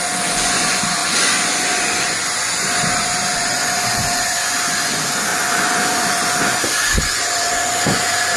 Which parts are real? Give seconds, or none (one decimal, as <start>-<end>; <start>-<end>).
none